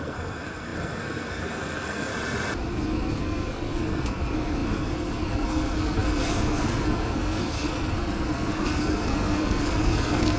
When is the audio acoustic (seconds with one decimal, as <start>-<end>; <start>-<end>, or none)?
2.1-2.7